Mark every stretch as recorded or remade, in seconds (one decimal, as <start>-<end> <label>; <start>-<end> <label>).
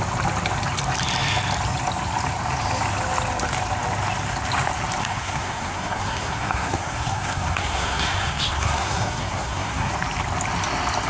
0.0-5.0 recorded; 5.0-9.9 remade; 9.9-11.1 recorded